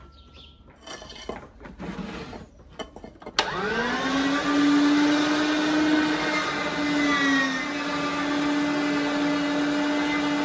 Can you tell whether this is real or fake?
real